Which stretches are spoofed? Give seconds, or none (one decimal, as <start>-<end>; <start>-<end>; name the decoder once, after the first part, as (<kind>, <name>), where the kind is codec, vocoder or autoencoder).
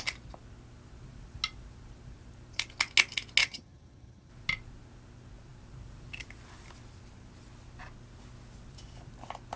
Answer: 3.4-4.3 (vocoder, HiFi-GAN)